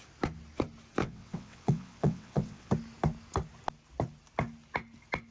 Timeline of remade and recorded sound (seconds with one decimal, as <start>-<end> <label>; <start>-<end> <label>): 0.0-1.0 recorded; 1.0-2.7 remade; 2.7-5.3 recorded